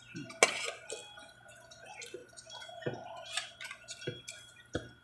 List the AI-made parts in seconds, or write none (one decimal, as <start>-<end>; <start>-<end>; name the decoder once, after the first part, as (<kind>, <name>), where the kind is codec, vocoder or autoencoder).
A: none